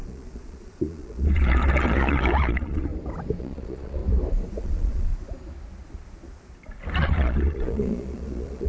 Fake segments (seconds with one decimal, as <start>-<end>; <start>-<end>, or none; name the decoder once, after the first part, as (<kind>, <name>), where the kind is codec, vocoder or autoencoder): 0.0-2.9 (vocoder, Vocos); 3.4-4.0; 4.6-5.1; 7.0-8.7